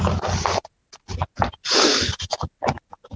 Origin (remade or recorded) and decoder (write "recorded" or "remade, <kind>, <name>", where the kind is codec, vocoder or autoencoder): recorded